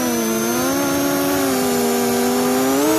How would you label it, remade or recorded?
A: recorded